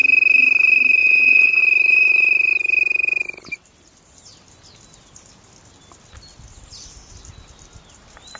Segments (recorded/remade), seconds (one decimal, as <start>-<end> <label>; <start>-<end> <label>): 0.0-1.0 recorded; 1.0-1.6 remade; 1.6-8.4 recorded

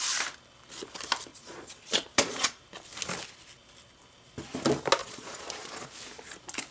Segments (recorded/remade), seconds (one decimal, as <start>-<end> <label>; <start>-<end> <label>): 0.0-1.3 recorded; 1.3-2.6 remade; 2.6-5.0 recorded; 5.0-5.9 remade; 5.9-6.7 recorded

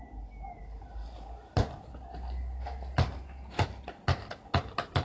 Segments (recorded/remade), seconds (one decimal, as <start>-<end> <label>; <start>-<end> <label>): 0.0-5.0 recorded

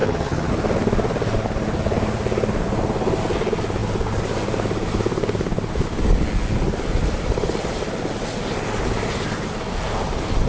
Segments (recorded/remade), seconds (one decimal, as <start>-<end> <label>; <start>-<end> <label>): 0.0-0.5 remade; 0.5-10.5 recorded